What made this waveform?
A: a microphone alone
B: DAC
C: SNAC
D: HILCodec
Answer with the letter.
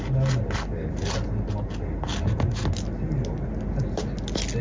A